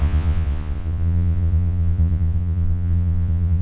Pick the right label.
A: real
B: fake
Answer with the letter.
B